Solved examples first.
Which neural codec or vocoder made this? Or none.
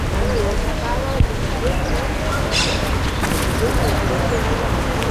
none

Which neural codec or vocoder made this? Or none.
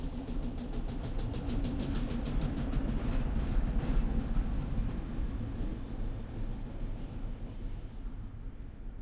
none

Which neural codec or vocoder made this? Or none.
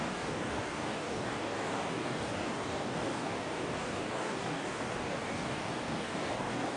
codec, DAC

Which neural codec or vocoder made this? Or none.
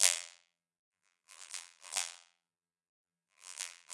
vocoder, BigVGAN v2